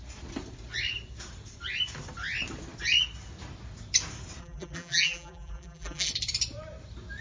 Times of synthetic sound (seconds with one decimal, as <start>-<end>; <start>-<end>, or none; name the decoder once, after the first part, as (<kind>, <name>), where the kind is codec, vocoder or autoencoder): 4.4-6.1 (vocoder, BigVGAN v2)